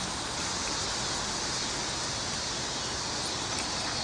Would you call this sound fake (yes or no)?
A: no